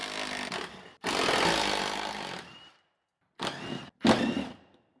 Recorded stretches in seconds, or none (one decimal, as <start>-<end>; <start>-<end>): 0.0-5.0